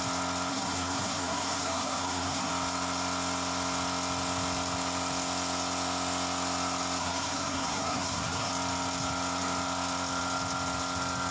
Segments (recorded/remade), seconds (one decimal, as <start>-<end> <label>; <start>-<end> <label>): 0.0-0.5 recorded; 0.5-2.5 remade; 2.5-7.0 recorded; 7.0-8.5 remade; 8.5-11.3 recorded